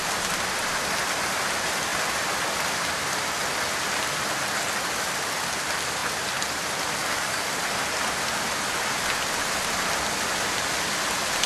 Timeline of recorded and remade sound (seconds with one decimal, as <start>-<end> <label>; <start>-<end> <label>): 0.0-7.0 recorded; 7.0-7.6 remade; 7.6-11.5 recorded